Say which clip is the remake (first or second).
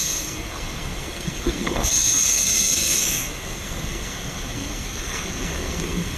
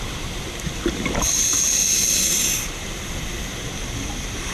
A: first